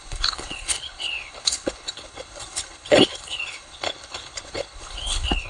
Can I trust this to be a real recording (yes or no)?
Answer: no